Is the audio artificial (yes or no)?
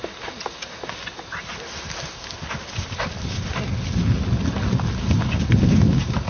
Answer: no